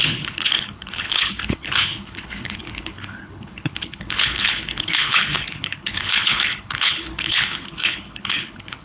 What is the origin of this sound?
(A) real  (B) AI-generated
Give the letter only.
B